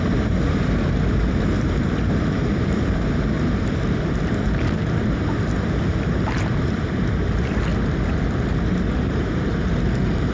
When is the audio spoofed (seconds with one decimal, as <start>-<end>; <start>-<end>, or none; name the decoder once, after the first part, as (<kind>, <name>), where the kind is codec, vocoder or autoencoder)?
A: 0.0-7.7 (vocoder, BigVGAN v2); 8.8-10.3